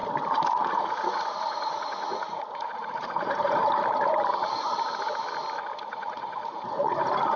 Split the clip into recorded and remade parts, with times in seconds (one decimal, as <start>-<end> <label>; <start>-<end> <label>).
0.0-0.6 recorded; 0.6-3.6 remade; 3.6-5.8 recorded; 5.8-7.4 remade